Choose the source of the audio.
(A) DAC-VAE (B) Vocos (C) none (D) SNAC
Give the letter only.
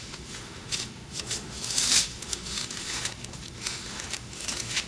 A